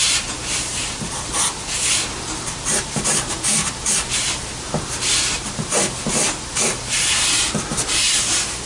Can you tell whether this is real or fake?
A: fake